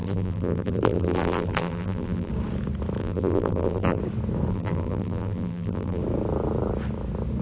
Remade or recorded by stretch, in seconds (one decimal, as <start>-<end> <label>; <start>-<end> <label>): 0.0-2.3 remade; 2.3-3.0 recorded; 3.0-4.0 remade; 4.0-4.5 recorded; 4.5-6.0 remade; 6.0-7.4 recorded